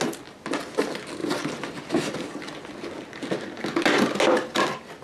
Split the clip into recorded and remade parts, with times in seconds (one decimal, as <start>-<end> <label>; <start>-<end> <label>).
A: 0.0-5.0 recorded